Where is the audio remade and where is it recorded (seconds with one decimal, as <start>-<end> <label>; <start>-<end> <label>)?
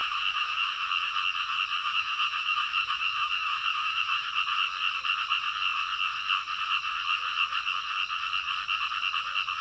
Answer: 0.0-0.7 remade; 0.7-1.8 recorded; 1.8-4.3 remade; 4.3-9.6 recorded